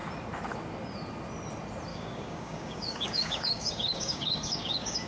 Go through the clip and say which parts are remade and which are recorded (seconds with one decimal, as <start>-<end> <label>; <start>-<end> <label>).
0.0-1.9 recorded; 1.9-5.1 remade